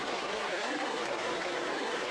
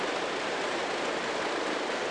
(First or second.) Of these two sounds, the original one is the second